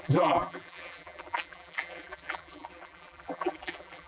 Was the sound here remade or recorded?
remade